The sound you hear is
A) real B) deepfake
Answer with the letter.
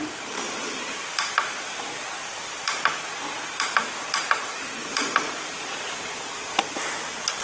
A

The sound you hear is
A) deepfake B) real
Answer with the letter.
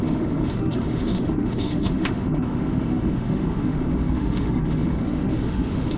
A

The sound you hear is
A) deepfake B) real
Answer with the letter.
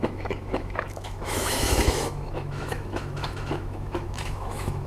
A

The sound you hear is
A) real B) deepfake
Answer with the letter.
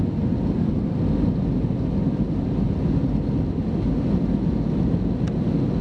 A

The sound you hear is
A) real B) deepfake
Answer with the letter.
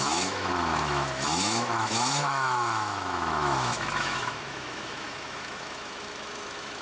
B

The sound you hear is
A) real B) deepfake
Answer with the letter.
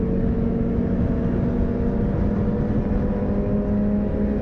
A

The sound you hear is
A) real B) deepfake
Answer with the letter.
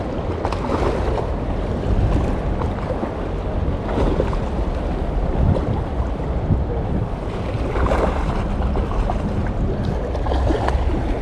A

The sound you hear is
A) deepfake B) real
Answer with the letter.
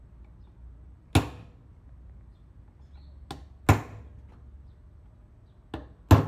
B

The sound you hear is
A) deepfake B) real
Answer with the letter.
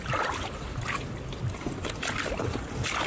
B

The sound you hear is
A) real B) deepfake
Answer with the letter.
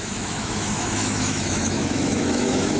B